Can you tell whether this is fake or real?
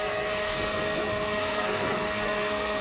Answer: fake